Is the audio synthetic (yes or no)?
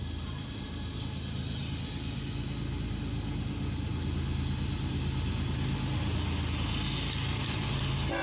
no